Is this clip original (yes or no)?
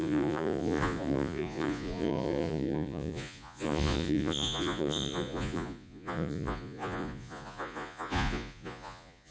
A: no